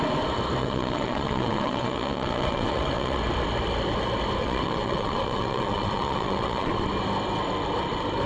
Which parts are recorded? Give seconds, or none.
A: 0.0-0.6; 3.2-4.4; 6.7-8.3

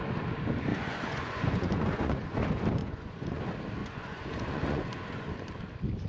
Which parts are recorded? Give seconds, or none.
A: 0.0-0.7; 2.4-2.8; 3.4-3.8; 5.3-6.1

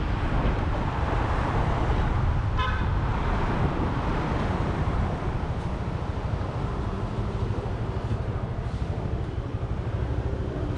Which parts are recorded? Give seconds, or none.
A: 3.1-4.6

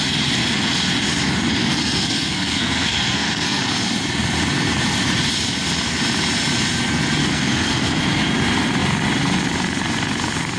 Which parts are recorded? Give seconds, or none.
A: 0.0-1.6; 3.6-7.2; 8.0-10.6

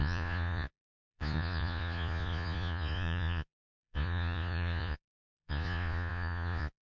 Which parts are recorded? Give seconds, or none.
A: none

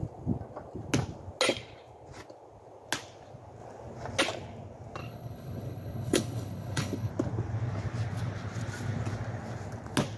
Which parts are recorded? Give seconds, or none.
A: 0.0-5.0; 7.1-10.2

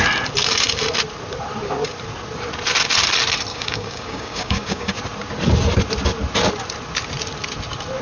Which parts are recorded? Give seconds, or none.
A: 0.0-3.5; 4.9-8.0